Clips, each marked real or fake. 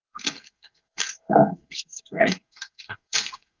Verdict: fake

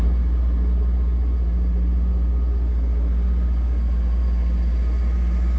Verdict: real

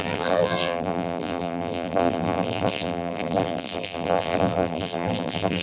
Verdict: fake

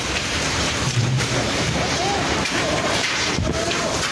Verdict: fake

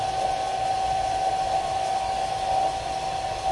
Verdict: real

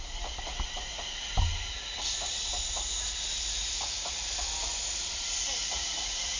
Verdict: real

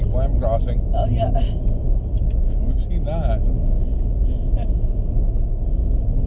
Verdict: real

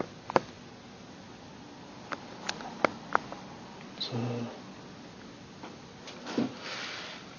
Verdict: real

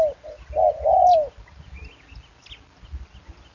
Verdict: real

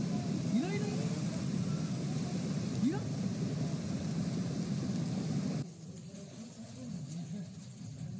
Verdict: real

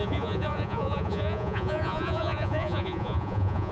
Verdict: fake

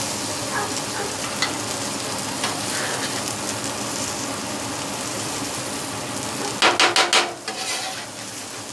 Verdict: real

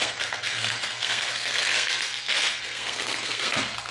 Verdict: fake